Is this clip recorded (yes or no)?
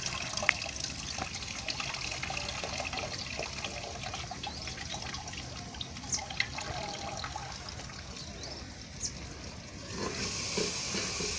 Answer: yes